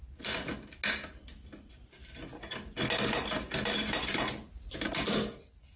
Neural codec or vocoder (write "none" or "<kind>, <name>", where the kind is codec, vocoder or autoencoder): none